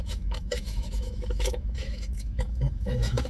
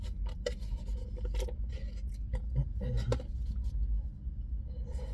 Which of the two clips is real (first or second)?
second